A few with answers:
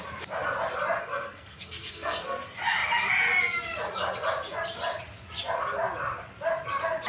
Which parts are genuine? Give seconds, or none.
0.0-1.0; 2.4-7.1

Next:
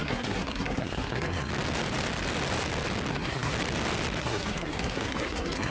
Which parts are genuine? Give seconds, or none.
1.5-3.1; 3.5-4.2

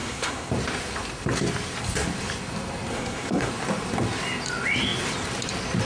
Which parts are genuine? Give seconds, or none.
0.5-2.9; 3.5-5.8

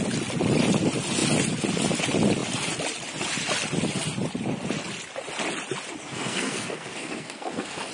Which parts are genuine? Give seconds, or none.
0.0-6.0

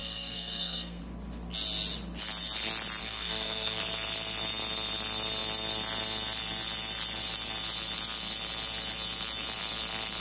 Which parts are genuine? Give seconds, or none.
1.0-3.0; 3.8-10.2

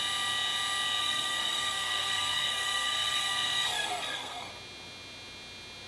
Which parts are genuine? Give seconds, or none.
0.0-1.0; 4.5-5.9